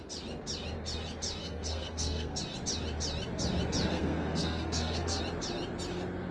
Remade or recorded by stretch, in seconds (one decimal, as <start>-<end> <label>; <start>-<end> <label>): 0.0-1.4 recorded; 1.4-2.4 remade; 2.4-3.9 recorded; 3.9-5.2 remade; 5.2-6.3 recorded